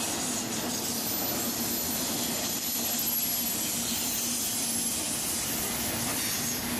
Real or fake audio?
real